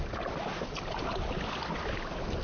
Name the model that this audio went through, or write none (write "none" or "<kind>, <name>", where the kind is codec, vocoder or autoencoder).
none